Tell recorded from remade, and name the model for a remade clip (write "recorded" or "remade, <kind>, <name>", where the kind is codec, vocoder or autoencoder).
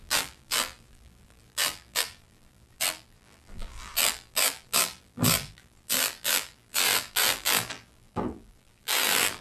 remade, vocoder, BigVGAN v2